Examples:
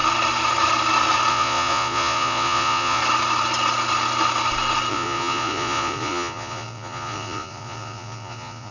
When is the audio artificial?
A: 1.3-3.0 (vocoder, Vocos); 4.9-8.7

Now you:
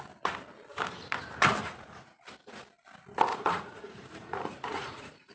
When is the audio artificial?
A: 1.6-2.2 (vocoder, Vocos); 3.3-5.3

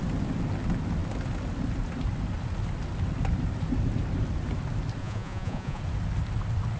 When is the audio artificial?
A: 5.0-5.8 (vocoder, Vocos)

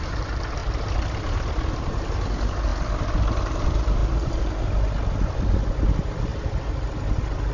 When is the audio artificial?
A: none